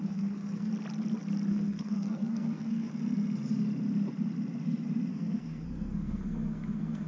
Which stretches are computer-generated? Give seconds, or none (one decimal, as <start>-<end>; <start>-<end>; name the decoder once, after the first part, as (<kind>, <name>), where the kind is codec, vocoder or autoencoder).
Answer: 0.0-0.7 (codec, SNAC); 1.5-2.9; 5.1-7.1